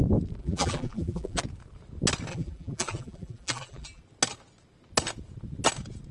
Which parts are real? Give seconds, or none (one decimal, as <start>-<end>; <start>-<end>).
0.0-0.4; 1.4-2.3; 4.0-6.1